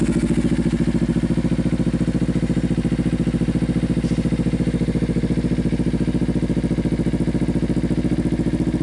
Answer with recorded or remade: recorded